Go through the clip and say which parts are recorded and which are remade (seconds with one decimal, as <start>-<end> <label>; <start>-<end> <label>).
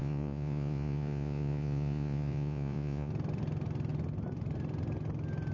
0.0-3.1 remade; 3.1-5.5 recorded